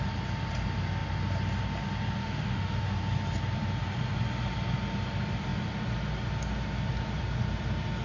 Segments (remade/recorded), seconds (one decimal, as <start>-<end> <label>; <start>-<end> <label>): 0.0-2.2 recorded; 2.2-2.8 remade; 2.8-8.0 recorded